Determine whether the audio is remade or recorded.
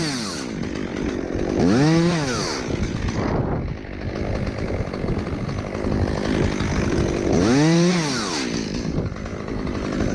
recorded